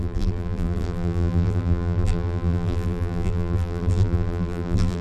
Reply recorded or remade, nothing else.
remade